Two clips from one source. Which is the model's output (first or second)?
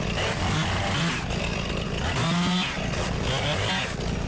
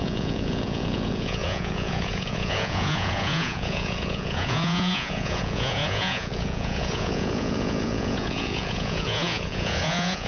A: second